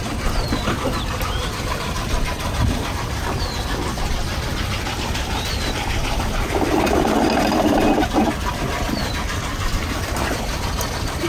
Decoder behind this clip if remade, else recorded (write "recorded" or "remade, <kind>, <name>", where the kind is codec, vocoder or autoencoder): remade, vocoder, BigVGAN v2